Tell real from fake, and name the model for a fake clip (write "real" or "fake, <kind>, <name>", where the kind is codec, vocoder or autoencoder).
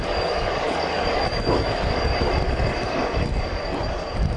fake, codec, DAC